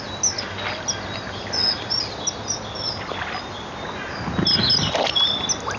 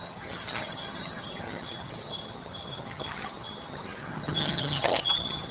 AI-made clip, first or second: second